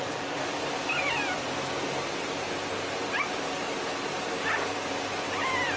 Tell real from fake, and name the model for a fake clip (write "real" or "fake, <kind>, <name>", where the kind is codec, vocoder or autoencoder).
real